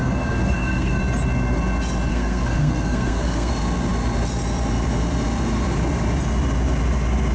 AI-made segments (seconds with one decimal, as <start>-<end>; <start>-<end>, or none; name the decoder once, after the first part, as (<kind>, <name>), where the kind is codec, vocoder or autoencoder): 0.0-1.0 (codec, SNAC); 2.1-3.5